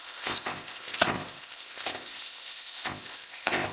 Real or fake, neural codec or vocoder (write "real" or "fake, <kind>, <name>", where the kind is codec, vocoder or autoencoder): fake, codec, ZipCodec